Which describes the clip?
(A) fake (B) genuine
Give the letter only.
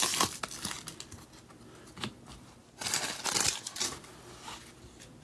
B